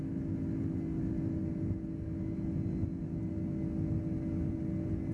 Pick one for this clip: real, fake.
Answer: real